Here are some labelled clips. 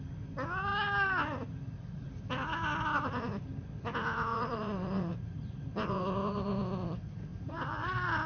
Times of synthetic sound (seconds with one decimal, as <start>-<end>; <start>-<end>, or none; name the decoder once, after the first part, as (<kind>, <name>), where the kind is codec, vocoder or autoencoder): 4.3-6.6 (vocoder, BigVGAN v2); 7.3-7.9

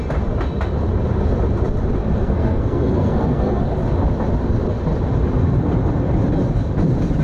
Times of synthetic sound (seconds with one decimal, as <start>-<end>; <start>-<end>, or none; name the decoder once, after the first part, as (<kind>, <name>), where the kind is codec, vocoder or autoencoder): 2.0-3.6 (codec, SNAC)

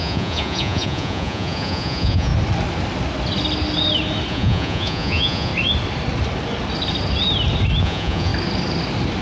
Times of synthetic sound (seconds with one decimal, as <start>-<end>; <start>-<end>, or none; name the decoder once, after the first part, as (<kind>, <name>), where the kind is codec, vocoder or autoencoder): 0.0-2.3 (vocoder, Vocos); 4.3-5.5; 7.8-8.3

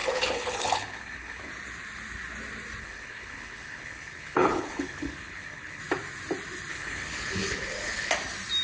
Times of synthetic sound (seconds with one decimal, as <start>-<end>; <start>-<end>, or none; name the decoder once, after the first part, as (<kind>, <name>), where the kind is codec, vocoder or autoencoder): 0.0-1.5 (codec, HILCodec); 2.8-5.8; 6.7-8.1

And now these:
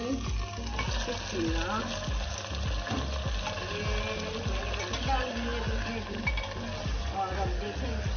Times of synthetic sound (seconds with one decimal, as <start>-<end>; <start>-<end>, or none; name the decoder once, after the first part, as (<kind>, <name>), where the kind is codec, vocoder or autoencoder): none